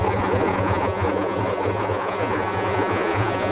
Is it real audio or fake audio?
fake